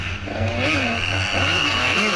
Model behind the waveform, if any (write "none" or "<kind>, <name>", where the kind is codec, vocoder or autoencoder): codec, SNAC